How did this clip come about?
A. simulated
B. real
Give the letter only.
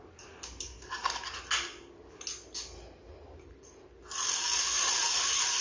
B